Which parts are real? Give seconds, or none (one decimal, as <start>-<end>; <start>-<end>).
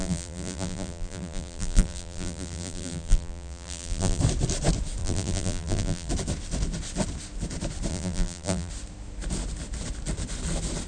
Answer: 4.2-5.0; 6.1-7.9; 8.7-10.9